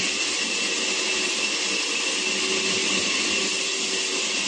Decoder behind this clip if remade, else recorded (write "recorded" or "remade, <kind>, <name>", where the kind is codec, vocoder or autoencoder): recorded